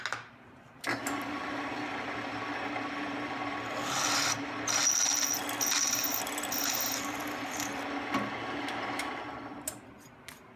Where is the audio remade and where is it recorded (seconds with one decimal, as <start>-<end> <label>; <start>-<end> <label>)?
0.0-10.6 recorded